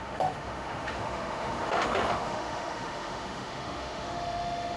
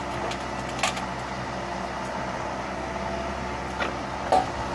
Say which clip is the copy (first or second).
first